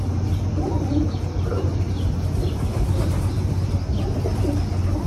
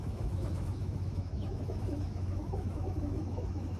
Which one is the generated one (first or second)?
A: second